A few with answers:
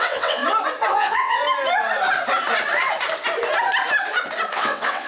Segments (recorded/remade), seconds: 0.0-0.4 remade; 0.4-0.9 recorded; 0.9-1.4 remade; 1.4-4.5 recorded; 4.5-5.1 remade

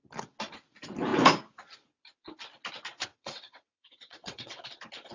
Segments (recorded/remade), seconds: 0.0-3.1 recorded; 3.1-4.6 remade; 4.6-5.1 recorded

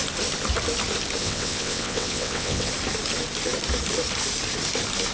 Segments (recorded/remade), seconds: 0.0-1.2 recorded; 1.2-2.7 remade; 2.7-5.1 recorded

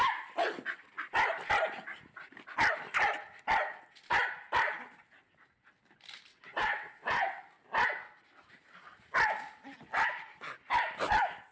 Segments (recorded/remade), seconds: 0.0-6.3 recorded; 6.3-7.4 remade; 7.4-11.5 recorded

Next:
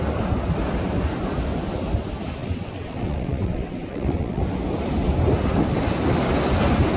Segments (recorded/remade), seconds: 0.0-2.4 recorded; 2.4-4.4 remade; 4.4-7.0 recorded

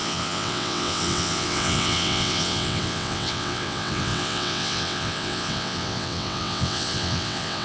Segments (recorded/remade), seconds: 0.0-7.6 remade

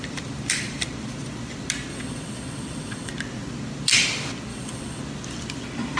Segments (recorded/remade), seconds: 0.0-1.9 recorded; 1.9-3.1 remade; 3.1-4.5 recorded; 4.5-5.0 remade; 5.0-6.0 recorded